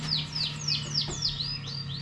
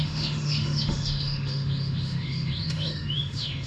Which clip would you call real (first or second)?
first